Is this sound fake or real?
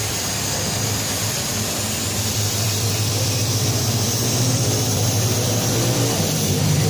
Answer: fake